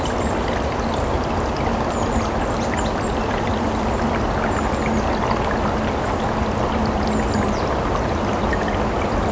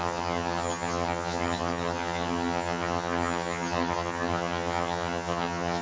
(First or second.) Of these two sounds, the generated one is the second